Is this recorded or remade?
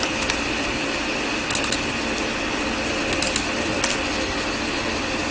recorded